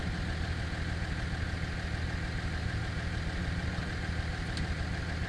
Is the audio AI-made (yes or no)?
no